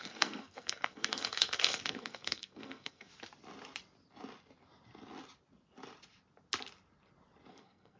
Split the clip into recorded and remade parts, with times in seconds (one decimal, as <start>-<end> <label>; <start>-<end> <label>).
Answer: 0.0-3.1 remade; 3.1-7.5 recorded; 7.5-8.0 remade